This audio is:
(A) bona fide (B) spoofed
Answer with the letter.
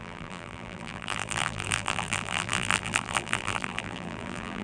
B